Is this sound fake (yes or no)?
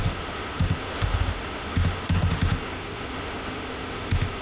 yes